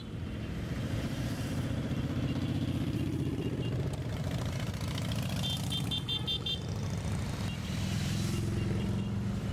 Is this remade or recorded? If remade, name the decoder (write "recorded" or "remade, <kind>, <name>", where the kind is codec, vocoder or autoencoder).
remade, vocoder, BigVGAN v2